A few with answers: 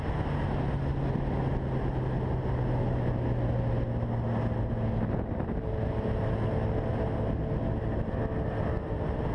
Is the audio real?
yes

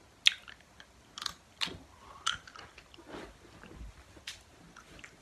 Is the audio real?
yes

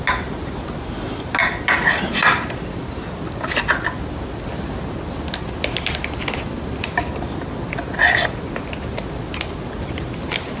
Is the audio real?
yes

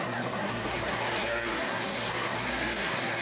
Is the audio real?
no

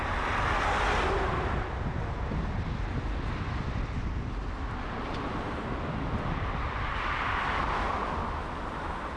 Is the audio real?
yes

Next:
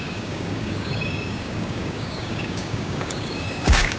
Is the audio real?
no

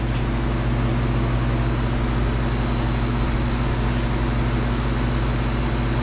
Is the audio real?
yes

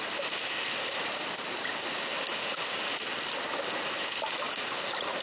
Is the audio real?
yes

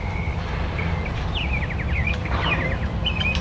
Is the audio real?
yes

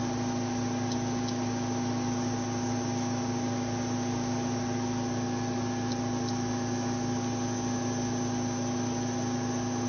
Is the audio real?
yes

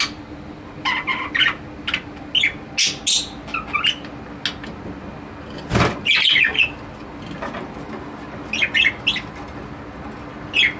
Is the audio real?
yes